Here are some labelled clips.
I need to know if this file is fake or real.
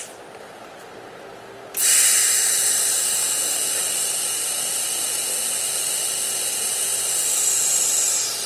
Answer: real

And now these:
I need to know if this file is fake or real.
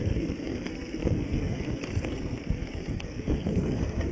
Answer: fake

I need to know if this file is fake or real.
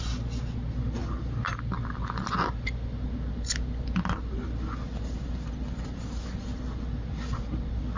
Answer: real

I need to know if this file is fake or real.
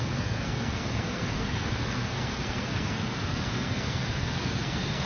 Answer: fake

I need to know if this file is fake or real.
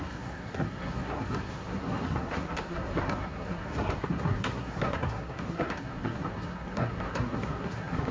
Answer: fake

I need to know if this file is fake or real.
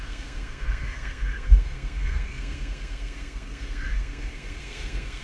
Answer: fake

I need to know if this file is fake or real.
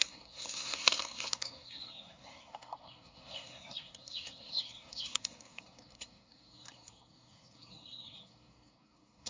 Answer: fake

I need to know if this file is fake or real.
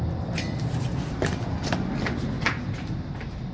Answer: real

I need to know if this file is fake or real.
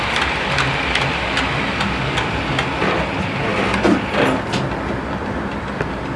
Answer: real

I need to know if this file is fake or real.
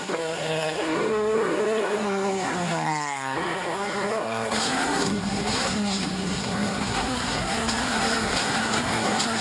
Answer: fake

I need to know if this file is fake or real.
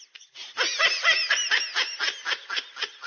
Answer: real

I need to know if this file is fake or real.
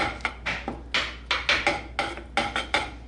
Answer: real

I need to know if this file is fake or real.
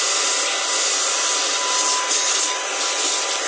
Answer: real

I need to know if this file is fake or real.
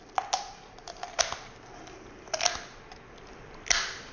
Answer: real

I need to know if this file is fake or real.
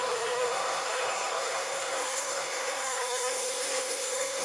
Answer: fake